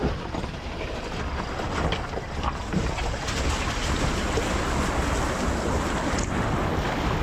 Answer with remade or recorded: recorded